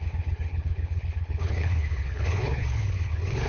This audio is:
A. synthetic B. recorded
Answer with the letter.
A